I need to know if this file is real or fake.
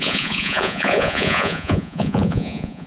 fake